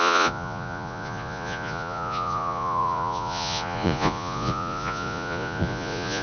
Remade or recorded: remade